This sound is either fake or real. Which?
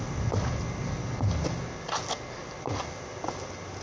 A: real